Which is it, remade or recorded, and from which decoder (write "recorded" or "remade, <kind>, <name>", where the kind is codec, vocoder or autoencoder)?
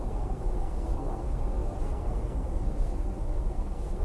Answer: remade, codec, SNAC